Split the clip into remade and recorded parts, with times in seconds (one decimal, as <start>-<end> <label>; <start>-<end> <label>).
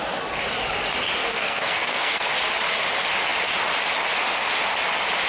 0.0-1.2 recorded; 1.2-2.3 remade; 2.3-5.3 recorded